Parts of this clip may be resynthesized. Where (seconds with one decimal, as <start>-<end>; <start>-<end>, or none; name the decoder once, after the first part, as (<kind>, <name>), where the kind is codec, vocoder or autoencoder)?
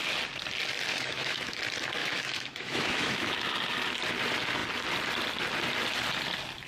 0.9-1.6 (autoencoder, DAC-VAE); 2.0-3.5